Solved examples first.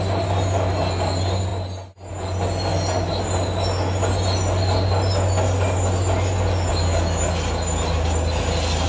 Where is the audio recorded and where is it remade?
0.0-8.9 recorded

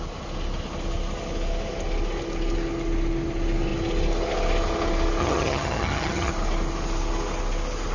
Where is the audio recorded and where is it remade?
0.0-5.2 recorded; 5.2-6.3 remade; 6.3-7.9 recorded

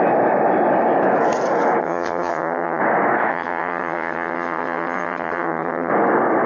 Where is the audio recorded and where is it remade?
0.0-1.8 recorded; 1.8-2.8 remade; 2.8-3.3 recorded; 3.3-5.9 remade; 5.9-6.5 recorded

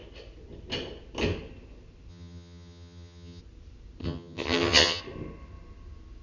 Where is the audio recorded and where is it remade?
0.0-2.1 recorded; 2.1-3.4 remade; 3.4-4.0 recorded; 4.0-5.0 remade; 5.0-6.2 recorded

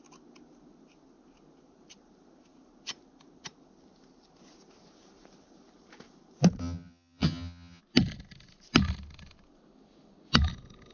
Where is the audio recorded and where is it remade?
0.0-6.6 recorded; 6.6-7.8 remade; 7.8-10.9 recorded

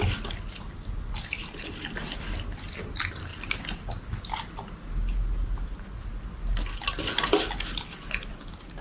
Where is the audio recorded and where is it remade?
0.0-8.8 recorded

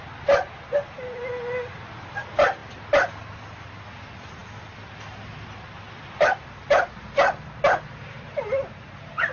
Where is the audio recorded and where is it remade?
0.0-9.3 recorded

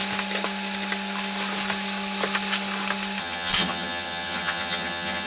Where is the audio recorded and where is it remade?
0.0-3.2 recorded; 3.2-5.3 remade